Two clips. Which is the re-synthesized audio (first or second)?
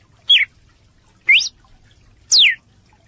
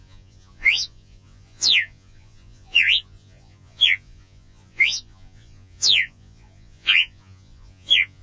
second